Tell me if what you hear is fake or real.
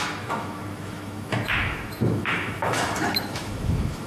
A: fake